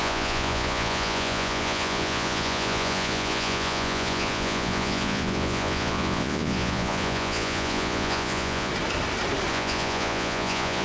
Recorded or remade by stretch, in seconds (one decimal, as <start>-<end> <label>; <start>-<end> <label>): 0.0-8.7 remade; 8.7-9.5 recorded; 9.5-10.8 remade